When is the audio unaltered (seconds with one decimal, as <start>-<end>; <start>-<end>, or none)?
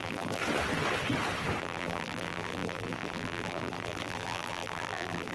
0.4-1.6